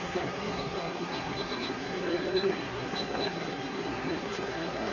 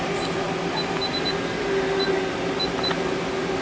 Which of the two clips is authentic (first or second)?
second